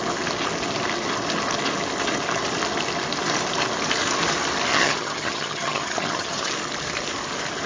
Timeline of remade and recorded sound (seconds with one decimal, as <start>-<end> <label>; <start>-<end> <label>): 0.0-4.7 recorded; 4.7-6.5 remade; 6.5-7.7 recorded

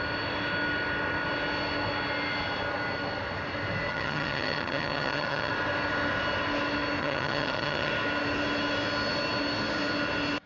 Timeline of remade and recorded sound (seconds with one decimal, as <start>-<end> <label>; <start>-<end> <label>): 0.0-3.9 recorded; 3.9-5.5 remade; 5.5-7.0 recorded; 7.0-7.9 remade; 7.9-10.5 recorded

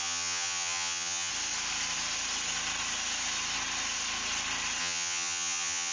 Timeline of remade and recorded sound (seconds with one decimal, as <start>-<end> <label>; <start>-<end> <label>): 0.0-1.3 remade; 1.3-4.8 recorded; 4.8-5.9 remade